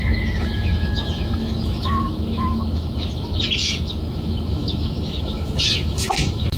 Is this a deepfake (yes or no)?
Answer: yes